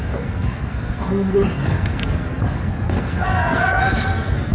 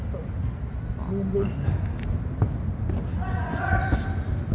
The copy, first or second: first